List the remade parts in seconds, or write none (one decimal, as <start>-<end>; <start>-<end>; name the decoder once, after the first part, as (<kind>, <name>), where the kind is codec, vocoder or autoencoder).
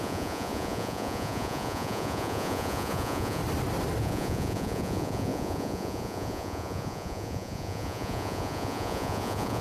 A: 0.0-3.4 (vocoder, Vocos); 4.0-9.6